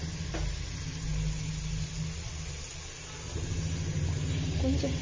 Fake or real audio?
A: real